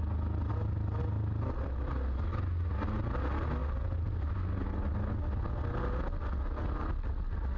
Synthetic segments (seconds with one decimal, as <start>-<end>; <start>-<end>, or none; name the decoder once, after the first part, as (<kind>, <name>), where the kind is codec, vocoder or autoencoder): none

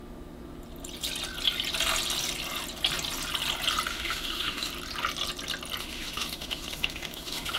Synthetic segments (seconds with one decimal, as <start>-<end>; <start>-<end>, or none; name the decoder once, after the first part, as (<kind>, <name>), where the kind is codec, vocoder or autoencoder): 3.9-4.7 (autoencoder, DAC-VAE); 5.8-7.6

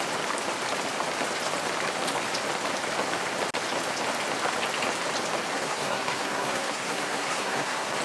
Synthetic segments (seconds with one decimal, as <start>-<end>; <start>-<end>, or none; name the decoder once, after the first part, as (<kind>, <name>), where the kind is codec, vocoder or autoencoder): 5.5-8.0 (codec, SNAC)

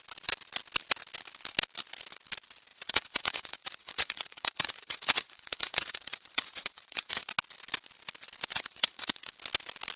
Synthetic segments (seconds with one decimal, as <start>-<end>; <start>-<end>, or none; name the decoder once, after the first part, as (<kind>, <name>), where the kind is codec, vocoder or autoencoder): 2.7-7.3 (vocoder, Vocos); 8.5-9.3

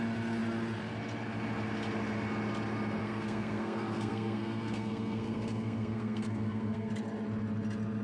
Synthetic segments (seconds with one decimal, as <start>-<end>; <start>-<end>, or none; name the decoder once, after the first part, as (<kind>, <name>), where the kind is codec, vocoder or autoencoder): 3.0-6.9 (codec, SNAC)